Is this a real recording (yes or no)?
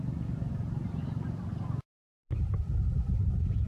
no